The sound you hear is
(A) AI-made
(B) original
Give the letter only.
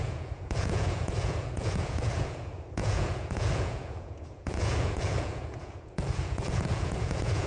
A